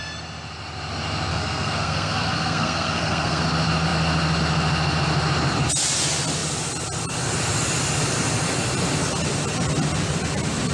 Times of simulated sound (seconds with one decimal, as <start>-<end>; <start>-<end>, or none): 1.3-3.4